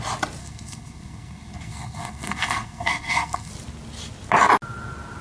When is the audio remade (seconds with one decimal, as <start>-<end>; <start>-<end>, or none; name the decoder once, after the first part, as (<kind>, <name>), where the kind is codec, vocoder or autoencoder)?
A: 0.4-3.5 (codec, SNAC)